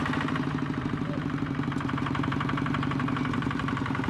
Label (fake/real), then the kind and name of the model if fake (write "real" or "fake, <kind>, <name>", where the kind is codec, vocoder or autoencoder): fake, vocoder, BigVGAN v2